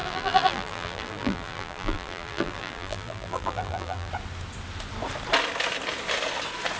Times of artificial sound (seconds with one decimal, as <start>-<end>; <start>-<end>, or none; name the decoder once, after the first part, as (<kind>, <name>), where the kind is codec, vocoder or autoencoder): 0.0-4.1 (vocoder, BigVGAN v2)

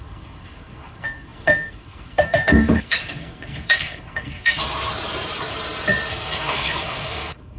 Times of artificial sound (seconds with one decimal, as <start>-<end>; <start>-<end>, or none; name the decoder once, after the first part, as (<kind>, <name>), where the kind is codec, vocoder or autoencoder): 0.0-4.6 (codec, SNAC); 6.1-7.6

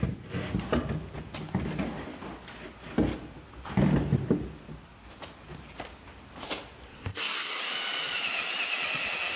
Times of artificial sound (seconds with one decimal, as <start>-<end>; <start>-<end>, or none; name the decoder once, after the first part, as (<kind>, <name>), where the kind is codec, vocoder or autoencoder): 6.9-7.6 (codec, SNAC)

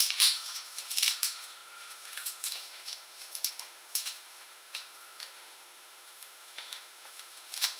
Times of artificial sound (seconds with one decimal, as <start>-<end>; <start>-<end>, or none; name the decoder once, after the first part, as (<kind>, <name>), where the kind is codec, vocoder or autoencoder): 0.0-7.8 (autoencoder, DAC-VAE)

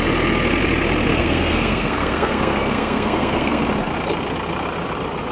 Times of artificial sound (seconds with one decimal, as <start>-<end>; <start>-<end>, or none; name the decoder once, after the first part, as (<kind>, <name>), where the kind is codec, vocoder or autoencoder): 1.1-3.6 (codec, SNAC)

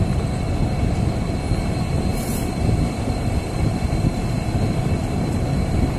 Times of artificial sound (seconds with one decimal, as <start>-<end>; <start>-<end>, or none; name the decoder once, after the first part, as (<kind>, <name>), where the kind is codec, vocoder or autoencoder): 2.1-6.0 (vocoder, BigVGAN v2)